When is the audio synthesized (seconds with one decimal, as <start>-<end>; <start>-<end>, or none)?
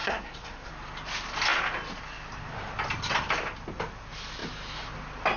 0.0-0.7